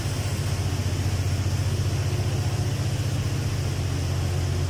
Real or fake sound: real